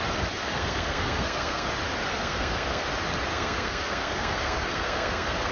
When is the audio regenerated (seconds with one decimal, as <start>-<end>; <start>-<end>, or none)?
0.4-1.7; 2.1-2.8; 3.3-5.5